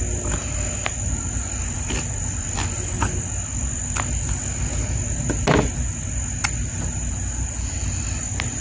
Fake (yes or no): no